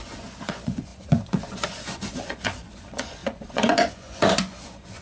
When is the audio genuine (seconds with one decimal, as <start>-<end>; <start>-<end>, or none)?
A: none